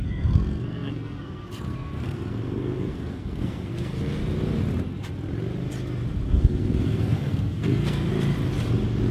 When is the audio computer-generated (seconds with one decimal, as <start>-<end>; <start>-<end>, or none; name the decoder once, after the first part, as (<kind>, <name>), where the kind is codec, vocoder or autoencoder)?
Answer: 0.0-4.2 (codec, SNAC); 6.3-8.1